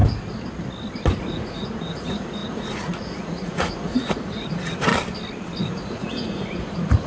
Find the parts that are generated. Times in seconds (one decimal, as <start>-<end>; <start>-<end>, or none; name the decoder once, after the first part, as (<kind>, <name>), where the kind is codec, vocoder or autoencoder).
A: 1.2-4.9 (vocoder, Vocos); 5.6-7.1